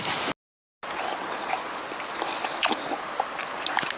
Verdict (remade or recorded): recorded